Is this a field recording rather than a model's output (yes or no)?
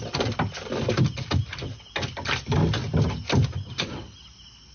yes